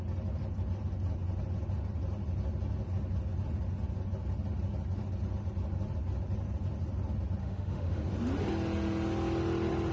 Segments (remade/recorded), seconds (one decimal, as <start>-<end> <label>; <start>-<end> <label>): 0.0-7.4 recorded; 7.4-8.0 remade; 8.0-9.9 recorded